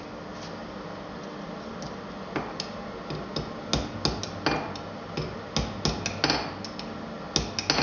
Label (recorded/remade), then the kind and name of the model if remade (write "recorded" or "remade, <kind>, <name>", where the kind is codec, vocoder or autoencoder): recorded